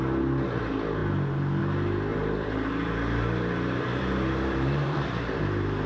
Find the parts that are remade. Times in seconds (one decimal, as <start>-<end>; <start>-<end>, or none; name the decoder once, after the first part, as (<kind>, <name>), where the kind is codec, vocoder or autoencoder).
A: 2.1-5.9 (vocoder, BigVGAN v2)